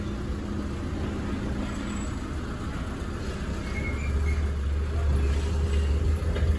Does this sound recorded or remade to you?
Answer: recorded